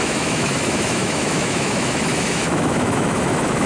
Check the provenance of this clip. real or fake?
fake